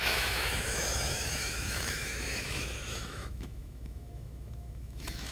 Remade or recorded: remade